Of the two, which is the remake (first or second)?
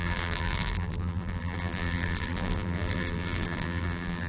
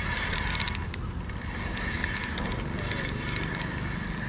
first